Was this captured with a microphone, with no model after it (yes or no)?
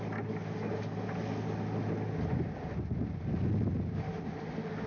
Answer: yes